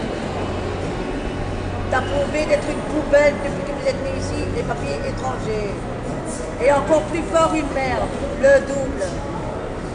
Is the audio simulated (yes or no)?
no